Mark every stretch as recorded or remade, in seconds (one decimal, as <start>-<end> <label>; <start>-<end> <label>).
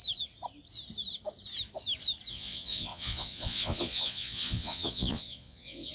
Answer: 0.0-2.3 recorded; 2.3-5.9 remade